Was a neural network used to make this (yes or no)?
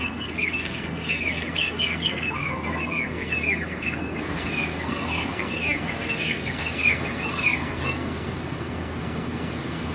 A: yes